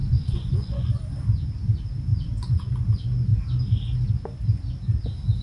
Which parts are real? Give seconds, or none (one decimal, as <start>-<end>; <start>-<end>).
0.9-2.1; 2.7-5.4